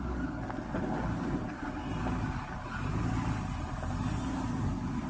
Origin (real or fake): real